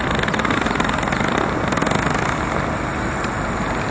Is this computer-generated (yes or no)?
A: no